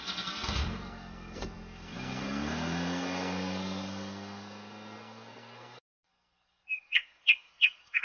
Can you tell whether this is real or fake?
fake